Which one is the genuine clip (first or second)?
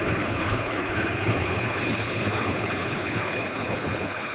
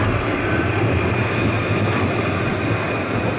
second